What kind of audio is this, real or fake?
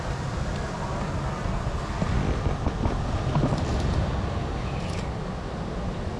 real